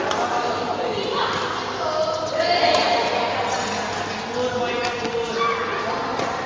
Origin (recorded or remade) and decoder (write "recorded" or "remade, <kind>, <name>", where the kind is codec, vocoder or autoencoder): recorded